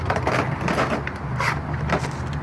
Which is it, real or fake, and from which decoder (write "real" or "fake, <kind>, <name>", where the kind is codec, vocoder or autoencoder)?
real